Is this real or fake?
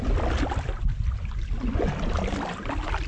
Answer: real